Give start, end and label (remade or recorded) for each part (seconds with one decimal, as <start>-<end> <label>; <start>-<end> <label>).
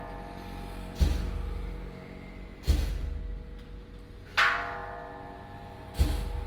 0.0-6.5 recorded